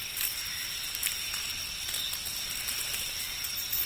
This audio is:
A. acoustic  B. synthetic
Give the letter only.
B